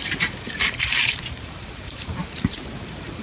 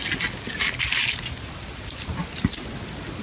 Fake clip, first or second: first